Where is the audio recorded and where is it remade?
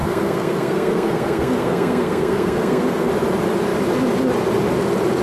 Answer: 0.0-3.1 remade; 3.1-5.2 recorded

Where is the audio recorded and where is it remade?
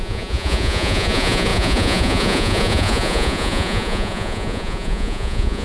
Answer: 0.0-5.6 remade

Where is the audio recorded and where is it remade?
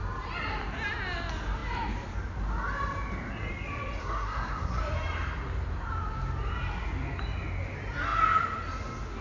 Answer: 0.0-4.0 recorded; 4.0-4.8 remade; 4.8-9.2 recorded